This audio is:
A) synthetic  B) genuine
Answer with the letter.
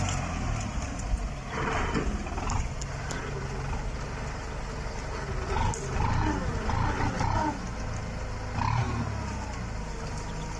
B